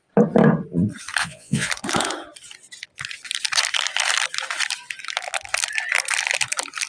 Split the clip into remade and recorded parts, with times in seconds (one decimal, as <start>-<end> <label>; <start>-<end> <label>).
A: 0.0-1.2 recorded; 1.2-1.7 remade; 1.7-6.9 recorded